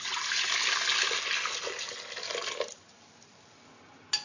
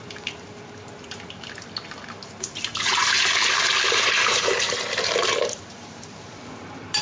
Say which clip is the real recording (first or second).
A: first